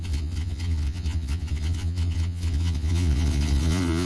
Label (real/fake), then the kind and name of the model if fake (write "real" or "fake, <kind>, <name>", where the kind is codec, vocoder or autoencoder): fake, vocoder, Vocos